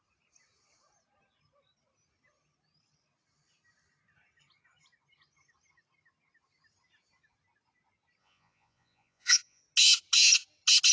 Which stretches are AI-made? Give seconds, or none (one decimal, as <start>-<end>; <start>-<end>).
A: 8.2-9.6